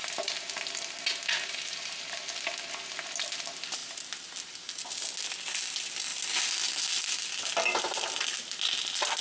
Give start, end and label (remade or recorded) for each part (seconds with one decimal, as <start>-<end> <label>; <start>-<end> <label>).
0.0-9.2 recorded